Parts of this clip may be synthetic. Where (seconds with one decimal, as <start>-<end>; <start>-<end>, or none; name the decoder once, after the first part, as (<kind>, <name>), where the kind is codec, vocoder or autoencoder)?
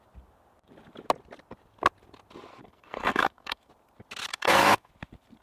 2.5-3.7 (codec, SNAC); 4.3-4.9